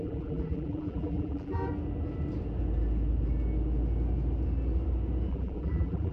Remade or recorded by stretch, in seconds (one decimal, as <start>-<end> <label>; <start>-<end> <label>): 0.0-1.6 remade; 1.6-5.3 recorded; 5.3-6.1 remade